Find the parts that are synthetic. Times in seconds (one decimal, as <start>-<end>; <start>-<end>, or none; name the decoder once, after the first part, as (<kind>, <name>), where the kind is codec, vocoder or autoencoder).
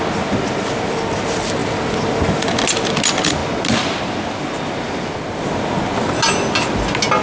none